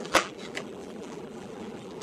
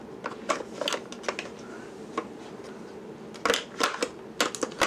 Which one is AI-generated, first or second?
first